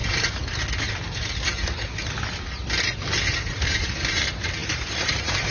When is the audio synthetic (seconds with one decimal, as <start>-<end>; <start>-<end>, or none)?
3.3-5.5